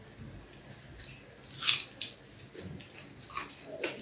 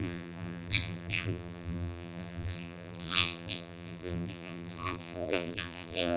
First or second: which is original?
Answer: first